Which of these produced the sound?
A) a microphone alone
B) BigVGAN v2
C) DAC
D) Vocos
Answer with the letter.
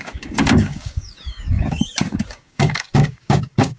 C